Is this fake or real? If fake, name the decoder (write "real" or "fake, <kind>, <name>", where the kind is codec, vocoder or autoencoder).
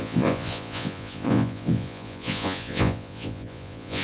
fake, vocoder, Vocos